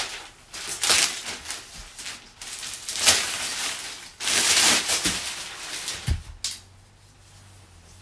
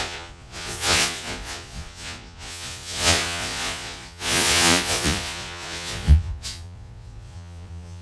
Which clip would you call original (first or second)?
first